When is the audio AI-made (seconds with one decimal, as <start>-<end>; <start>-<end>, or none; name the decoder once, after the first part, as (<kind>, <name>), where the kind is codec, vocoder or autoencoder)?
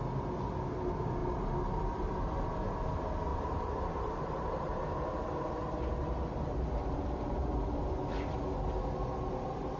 3.3-7.7 (vocoder, BigVGAN v2)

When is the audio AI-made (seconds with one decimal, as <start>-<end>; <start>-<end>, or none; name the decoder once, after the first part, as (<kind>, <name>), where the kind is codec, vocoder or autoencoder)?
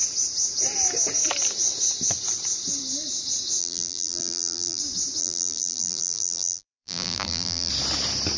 3.6-4.8 (vocoder, BigVGAN v2); 5.2-7.7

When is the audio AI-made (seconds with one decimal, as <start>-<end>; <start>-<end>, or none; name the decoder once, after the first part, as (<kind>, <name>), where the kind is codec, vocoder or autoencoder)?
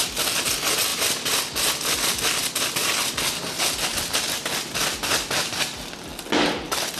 none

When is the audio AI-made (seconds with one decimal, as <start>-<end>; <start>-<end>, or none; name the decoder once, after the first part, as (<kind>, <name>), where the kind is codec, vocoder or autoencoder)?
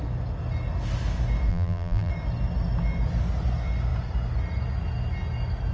1.5-2.1 (vocoder, BigVGAN v2)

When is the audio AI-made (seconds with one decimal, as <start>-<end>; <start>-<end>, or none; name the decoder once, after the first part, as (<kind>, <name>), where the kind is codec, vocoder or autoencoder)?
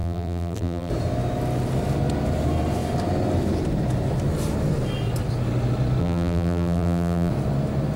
0.0-0.9 (vocoder, BigVGAN v2); 6.0-7.3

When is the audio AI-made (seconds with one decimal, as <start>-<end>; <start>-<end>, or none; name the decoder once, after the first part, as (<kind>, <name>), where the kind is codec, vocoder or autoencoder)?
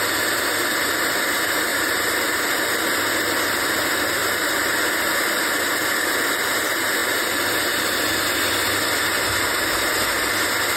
1.7-2.6 (vocoder, BigVGAN v2); 4.2-4.9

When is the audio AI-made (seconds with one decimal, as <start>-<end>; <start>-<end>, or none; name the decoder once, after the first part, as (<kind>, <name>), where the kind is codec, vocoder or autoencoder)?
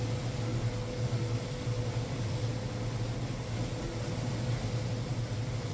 0.0-0.5 (vocoder, BigVGAN v2); 1.8-2.5; 5.1-5.7